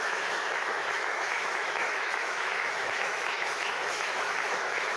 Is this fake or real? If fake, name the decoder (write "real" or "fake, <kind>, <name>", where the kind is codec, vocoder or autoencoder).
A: fake, autoencoder, DAC-VAE